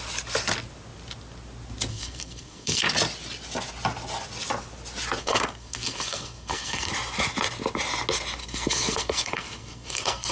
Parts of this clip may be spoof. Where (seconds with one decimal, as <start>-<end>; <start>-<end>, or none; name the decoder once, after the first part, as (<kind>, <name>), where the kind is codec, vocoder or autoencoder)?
1.9-2.8 (codec, SNAC); 5.2-6.9; 8.4-10.3